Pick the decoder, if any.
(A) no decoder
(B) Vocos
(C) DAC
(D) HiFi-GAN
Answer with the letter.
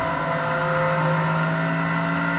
A